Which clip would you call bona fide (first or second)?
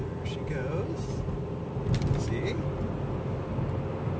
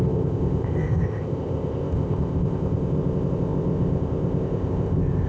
first